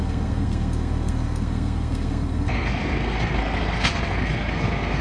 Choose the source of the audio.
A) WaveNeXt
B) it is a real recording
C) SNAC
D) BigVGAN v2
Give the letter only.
C